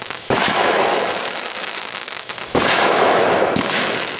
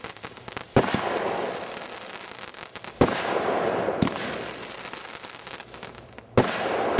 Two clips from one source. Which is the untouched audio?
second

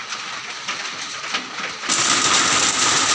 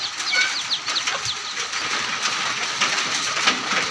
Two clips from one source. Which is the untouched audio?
first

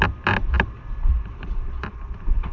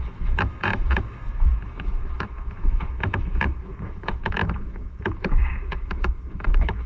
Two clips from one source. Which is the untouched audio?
first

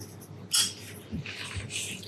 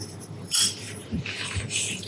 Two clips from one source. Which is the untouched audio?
first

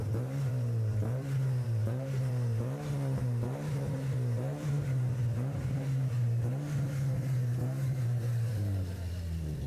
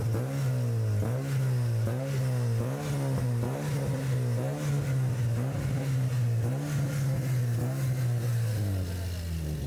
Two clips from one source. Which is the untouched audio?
second